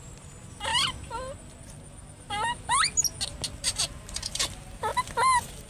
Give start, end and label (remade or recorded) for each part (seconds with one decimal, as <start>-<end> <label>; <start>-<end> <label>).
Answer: 0.0-0.7 remade; 0.7-3.6 recorded; 3.6-4.9 remade; 4.9-5.7 recorded